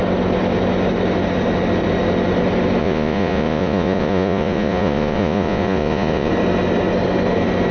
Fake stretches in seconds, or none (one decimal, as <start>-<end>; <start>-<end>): 2.8-6.3